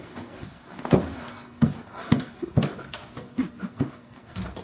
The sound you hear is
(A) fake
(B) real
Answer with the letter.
A